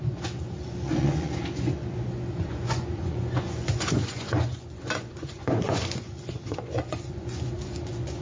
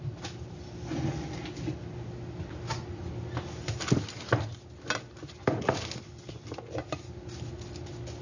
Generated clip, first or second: first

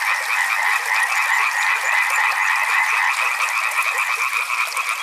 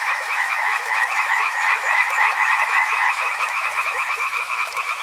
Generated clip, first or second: second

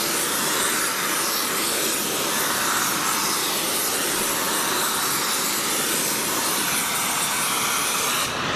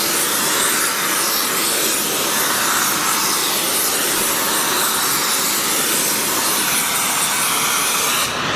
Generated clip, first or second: first